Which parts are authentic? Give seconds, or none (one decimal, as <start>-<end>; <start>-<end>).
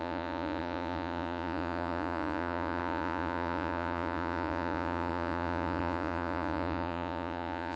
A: none